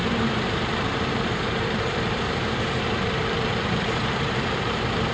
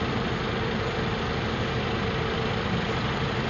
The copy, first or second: first